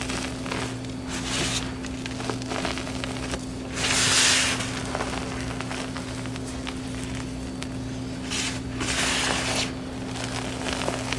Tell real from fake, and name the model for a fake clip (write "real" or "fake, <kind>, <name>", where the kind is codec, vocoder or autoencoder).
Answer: real